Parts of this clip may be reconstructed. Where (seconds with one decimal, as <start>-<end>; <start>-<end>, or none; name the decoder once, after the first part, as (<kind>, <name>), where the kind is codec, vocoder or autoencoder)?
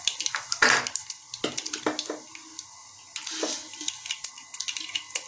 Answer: 3.6-4.3 (vocoder, BigVGAN v2)